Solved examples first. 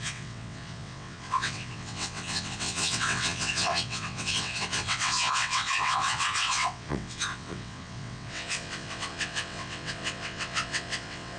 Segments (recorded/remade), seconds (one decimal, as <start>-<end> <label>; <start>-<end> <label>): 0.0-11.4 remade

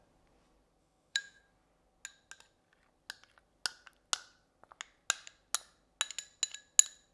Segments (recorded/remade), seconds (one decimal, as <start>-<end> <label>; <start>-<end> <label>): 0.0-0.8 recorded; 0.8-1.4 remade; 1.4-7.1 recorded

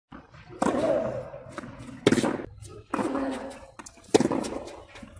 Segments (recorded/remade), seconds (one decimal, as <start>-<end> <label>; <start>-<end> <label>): 0.0-5.2 recorded